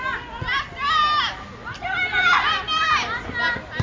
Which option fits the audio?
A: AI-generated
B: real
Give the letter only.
B